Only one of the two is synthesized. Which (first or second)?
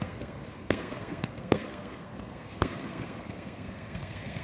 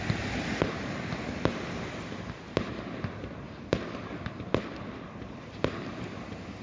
first